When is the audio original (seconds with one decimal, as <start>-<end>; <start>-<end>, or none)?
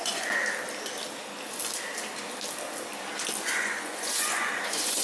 0.4-3.4